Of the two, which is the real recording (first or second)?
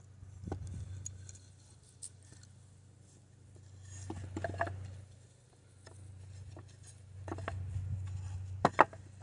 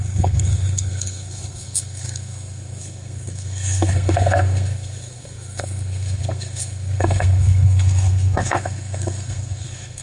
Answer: first